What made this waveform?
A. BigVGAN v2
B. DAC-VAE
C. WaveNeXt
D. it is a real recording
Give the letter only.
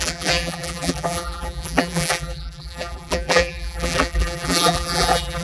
A